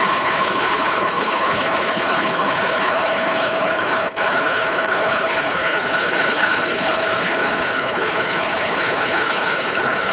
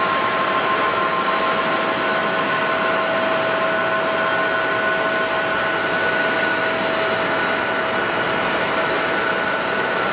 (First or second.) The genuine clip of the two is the second